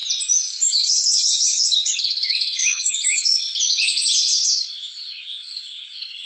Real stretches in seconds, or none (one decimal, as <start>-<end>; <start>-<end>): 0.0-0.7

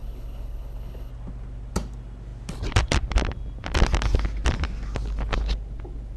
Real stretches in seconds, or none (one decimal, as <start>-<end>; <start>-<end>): 1.1-6.2

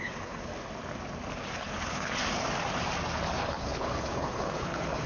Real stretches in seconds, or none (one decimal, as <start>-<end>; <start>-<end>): 0.5-1.6; 2.2-3.3

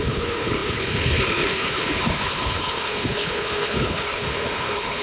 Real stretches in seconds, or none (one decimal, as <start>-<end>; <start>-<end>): none

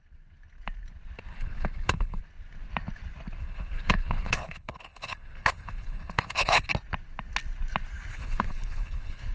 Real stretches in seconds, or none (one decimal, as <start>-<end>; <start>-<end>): 0.0-1.3; 2.2-3.4; 6.7-8.1